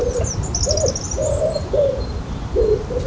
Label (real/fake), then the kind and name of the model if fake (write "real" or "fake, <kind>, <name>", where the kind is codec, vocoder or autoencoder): real